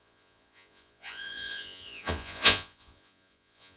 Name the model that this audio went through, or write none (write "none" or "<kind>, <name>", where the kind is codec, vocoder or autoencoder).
vocoder, Vocos